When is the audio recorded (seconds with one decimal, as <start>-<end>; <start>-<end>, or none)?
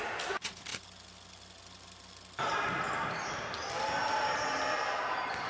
0.0-5.5